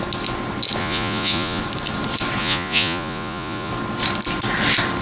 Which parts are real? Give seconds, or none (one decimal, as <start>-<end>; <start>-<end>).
0.0-0.8; 1.6-2.4; 3.7-5.0